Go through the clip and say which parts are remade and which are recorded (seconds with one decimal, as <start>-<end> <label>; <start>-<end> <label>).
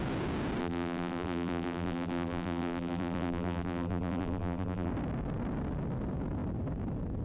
0.0-0.6 recorded; 0.6-4.9 remade; 4.9-7.2 recorded